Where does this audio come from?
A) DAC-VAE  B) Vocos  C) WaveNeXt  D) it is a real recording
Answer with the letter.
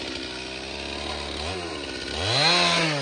D